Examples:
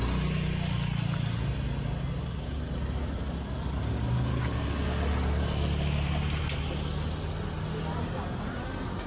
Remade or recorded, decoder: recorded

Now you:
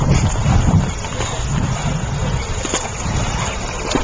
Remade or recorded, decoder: recorded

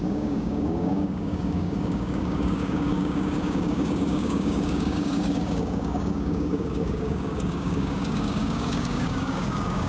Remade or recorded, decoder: remade, codec, DAC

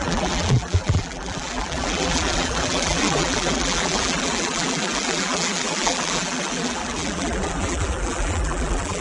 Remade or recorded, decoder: remade, vocoder, BigVGAN v2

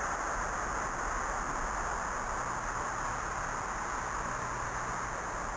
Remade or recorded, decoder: recorded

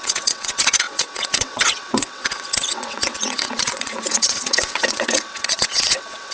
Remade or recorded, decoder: remade, vocoder, WaveNeXt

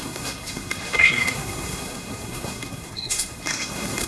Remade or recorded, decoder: remade, codec, SNAC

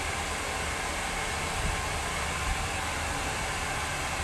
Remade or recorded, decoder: recorded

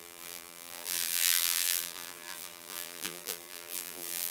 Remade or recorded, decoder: remade, vocoder, BigVGAN v2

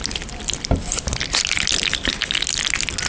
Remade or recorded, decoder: recorded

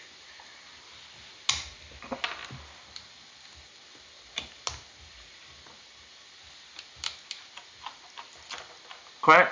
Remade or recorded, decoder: recorded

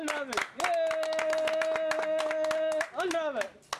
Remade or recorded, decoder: recorded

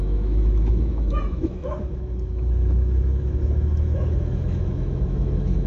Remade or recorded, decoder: remade, autoencoder, DAC-VAE